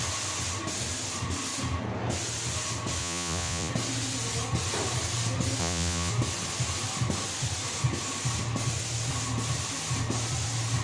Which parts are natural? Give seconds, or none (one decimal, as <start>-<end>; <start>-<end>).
0.0-3.0; 3.7-5.6; 6.1-10.8